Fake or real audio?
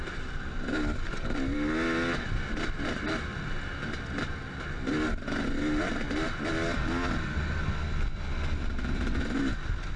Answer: real